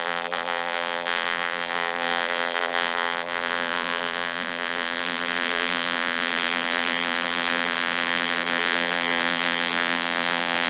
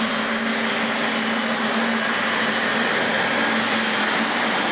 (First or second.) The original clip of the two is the second